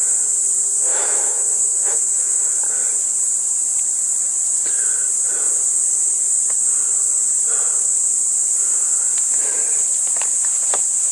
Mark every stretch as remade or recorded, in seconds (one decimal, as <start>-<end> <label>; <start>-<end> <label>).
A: 0.0-0.9 recorded; 0.9-2.6 remade; 2.6-11.1 recorded